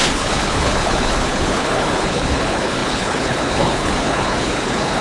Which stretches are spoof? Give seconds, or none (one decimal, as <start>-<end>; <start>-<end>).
0.0-5.0

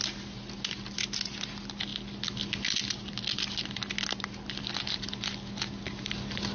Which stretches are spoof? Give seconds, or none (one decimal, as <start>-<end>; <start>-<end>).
none

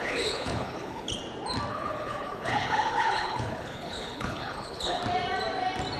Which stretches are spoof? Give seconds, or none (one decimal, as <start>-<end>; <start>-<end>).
0.0-1.2; 1.7-5.0

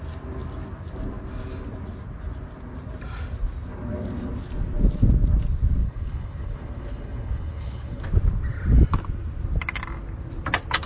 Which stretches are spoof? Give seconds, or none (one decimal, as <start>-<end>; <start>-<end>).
5.8-8.0

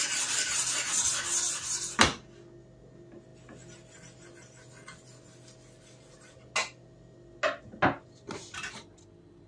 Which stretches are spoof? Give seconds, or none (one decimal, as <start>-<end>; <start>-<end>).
none